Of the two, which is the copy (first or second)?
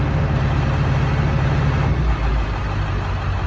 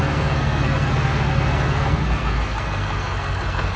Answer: second